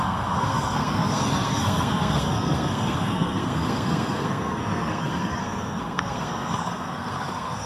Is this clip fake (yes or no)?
yes